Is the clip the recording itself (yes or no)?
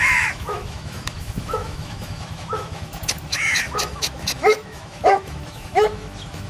no